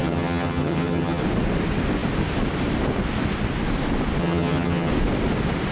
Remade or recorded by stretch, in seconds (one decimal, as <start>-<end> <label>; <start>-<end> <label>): 0.0-1.2 remade; 1.2-4.2 recorded; 4.2-4.9 remade; 4.9-5.7 recorded